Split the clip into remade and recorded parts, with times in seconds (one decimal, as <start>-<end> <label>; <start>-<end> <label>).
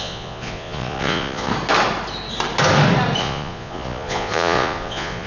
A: 0.0-1.5 remade; 1.5-3.2 recorded; 3.2-5.3 remade